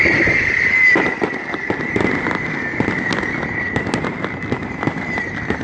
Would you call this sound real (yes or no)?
yes